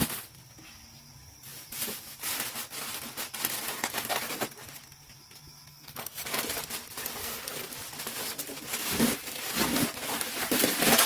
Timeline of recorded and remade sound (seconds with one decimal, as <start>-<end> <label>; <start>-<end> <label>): 0.0-5.7 recorded; 5.7-6.3 remade; 6.3-7.2 recorded; 7.2-7.7 remade; 7.7-11.1 recorded